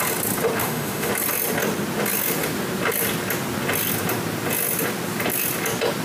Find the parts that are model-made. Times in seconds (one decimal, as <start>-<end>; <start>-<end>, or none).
0.6-1.1